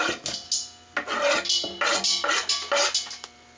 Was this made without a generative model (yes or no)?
yes